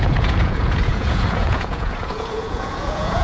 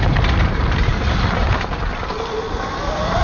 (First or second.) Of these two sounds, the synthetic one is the first